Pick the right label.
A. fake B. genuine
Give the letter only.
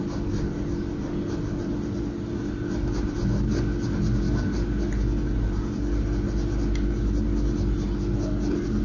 B